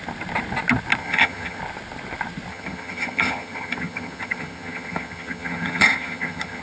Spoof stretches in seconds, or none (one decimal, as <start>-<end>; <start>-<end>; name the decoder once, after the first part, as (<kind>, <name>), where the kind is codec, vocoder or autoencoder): 1.0-1.6 (vocoder, HiFi-GAN); 2.5-6.6